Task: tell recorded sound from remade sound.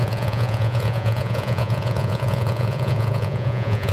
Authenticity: remade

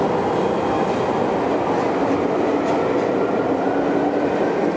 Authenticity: recorded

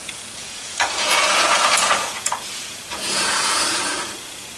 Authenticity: remade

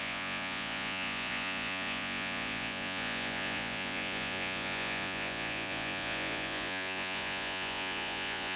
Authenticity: remade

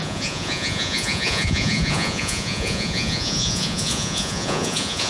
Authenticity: remade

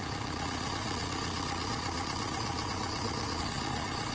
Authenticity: remade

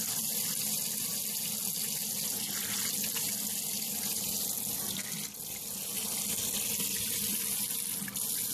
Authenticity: recorded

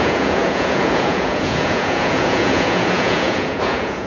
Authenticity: remade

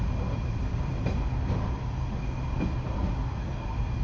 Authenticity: recorded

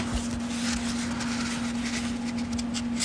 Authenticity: recorded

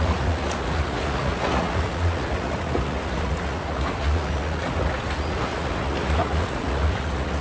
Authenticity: remade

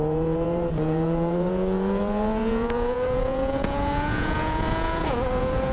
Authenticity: remade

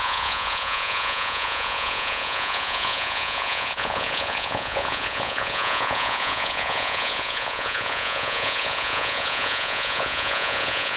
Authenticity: remade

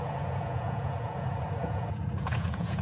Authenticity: remade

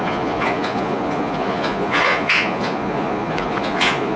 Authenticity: remade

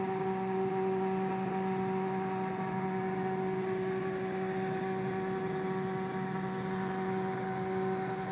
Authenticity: recorded